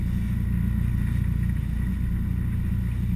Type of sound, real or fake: real